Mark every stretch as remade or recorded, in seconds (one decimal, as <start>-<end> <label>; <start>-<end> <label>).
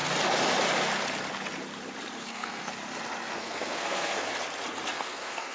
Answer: 0.0-2.2 recorded; 2.2-2.7 remade; 2.7-3.3 recorded; 3.3-4.3 remade; 4.3-4.9 recorded; 4.9-5.5 remade